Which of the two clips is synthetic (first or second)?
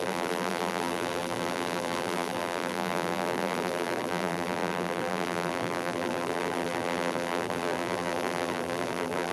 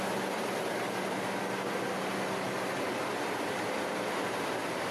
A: first